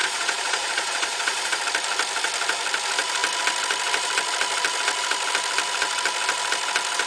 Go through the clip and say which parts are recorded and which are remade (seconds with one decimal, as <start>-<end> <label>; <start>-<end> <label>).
0.0-1.6 remade; 1.6-7.1 recorded